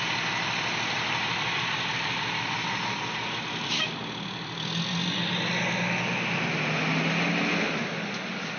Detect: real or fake real